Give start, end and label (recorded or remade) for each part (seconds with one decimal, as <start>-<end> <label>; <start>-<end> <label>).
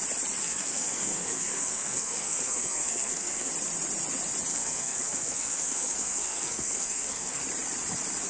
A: 0.0-0.4 recorded; 0.4-3.5 remade; 3.5-4.5 recorded; 4.5-7.4 remade; 7.4-8.3 recorded